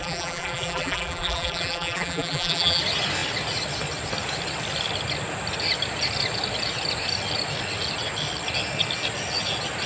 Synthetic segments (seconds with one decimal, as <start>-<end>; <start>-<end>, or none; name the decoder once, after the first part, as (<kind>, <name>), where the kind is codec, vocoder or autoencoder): 0.0-2.8 (vocoder, BigVGAN v2)